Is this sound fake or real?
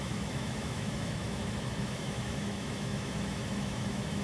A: fake